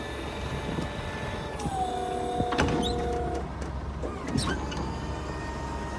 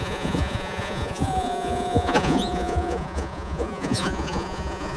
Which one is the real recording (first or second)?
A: first